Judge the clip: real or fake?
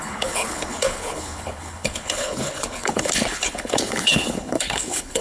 fake